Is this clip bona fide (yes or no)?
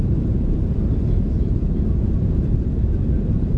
no